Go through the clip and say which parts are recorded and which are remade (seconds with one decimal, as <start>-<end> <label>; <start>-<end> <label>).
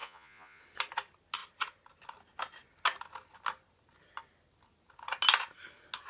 0.0-0.6 remade; 0.6-6.1 recorded